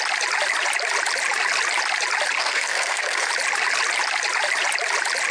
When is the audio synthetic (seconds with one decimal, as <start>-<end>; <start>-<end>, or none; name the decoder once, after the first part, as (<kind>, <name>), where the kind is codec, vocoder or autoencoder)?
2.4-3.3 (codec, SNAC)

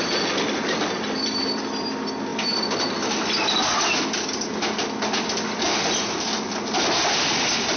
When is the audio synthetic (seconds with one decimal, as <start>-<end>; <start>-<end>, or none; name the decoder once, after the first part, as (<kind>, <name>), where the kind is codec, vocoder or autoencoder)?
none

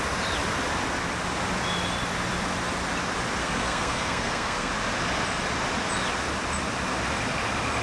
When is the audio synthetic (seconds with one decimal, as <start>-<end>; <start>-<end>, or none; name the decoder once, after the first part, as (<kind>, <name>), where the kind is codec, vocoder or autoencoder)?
3.4-4.7 (codec, SNAC)